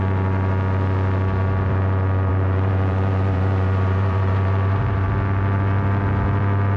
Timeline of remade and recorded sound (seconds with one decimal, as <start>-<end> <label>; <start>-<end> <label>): 0.0-2.3 recorded; 2.3-5.1 remade; 5.1-6.8 recorded